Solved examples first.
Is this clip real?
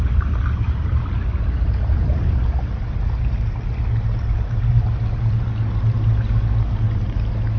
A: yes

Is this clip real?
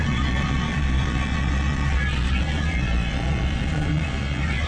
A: no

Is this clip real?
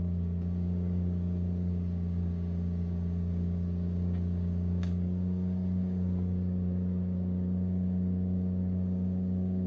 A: no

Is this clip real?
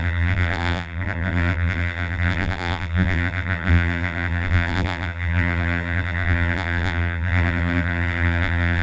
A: no